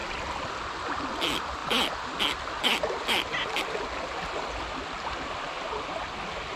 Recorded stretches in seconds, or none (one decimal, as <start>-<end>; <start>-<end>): 0.0-6.6